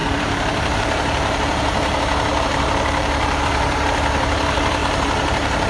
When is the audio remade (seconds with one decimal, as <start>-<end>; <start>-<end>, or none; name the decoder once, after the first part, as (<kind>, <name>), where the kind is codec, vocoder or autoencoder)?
0.0-3.4 (vocoder, BigVGAN v2); 4.8-5.7